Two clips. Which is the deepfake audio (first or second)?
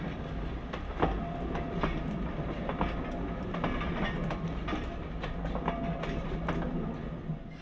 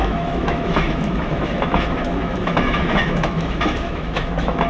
second